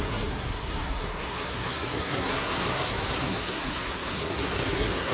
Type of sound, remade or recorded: remade